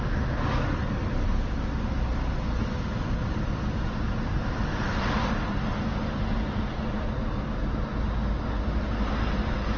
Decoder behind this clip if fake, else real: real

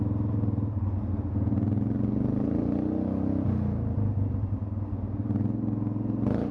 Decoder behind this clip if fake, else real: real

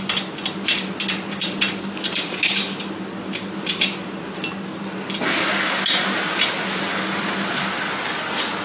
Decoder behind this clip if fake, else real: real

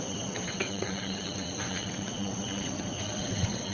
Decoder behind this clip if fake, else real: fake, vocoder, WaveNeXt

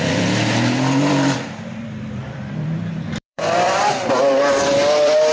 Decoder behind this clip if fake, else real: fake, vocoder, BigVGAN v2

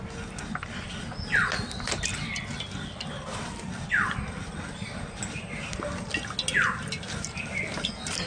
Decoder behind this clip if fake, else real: real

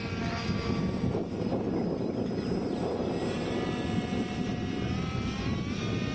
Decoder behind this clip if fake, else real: real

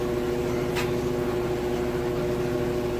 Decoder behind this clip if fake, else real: real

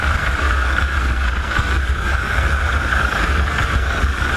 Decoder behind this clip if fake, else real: fake, codec, SNAC